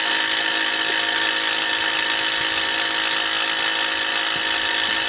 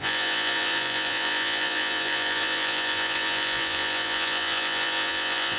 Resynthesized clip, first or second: second